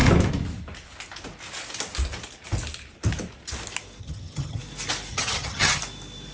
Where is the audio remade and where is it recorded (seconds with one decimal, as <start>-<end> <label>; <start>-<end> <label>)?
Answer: 0.0-4.0 recorded; 4.0-4.6 remade; 4.6-5.1 recorded; 5.1-5.8 remade; 5.8-6.3 recorded